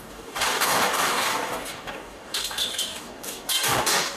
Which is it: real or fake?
fake